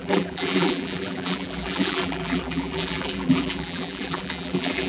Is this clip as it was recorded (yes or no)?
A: no